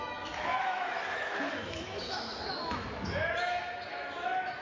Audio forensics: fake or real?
fake